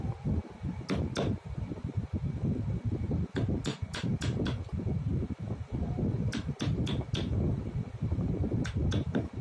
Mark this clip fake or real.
real